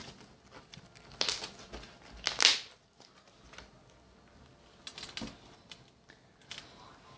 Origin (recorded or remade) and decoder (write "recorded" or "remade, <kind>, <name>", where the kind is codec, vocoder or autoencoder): recorded